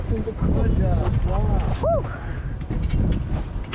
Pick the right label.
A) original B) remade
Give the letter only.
A